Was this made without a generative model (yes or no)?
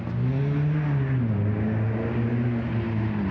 yes